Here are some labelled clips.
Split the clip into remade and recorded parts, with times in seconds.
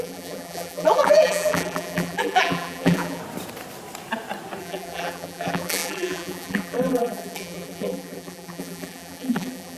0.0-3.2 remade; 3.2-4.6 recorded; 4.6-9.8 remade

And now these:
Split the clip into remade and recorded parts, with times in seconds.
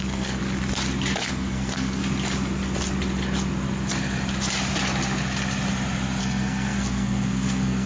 0.0-0.4 remade; 0.4-1.3 recorded; 1.3-2.0 remade; 2.0-6.2 recorded; 6.2-7.9 remade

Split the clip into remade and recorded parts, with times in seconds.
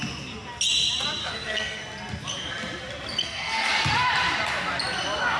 0.0-1.2 recorded; 1.2-1.8 remade; 1.8-3.2 recorded; 3.2-3.7 remade; 3.7-5.4 recorded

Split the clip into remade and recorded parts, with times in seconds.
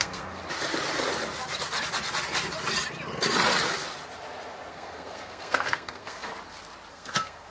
0.0-0.4 remade; 0.4-4.7 recorded; 4.7-6.3 remade; 6.3-6.9 recorded; 6.9-7.5 remade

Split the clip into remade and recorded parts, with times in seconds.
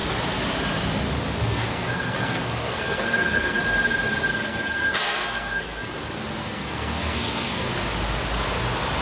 0.0-1.4 recorded; 1.4-3.6 remade; 3.6-4.3 recorded; 4.3-5.9 remade; 5.9-6.4 recorded; 6.4-7.7 remade; 7.7-9.0 recorded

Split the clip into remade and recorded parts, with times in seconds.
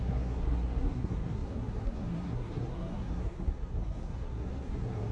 0.0-5.1 remade